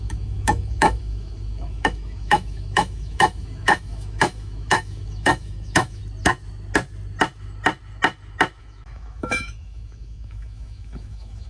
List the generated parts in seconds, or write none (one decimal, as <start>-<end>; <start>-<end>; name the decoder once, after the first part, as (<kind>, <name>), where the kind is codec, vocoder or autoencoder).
0.0-6.0 (autoencoder, DAC-VAE); 8.6-11.5